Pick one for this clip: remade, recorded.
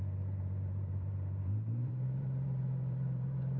remade